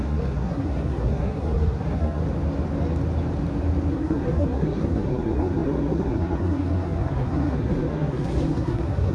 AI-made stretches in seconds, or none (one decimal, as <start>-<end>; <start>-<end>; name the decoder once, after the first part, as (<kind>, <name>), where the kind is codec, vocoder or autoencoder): 0.0-2.2 (codec, SNAC); 3.9-9.1